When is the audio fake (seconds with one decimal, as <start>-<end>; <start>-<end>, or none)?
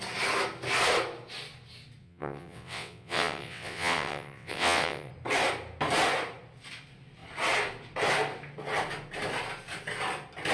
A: 2.0-5.1